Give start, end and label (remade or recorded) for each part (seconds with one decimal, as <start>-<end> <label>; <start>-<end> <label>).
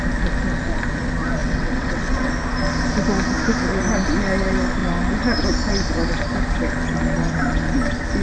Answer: 0.0-1.4 recorded; 1.4-2.3 remade; 2.3-8.2 recorded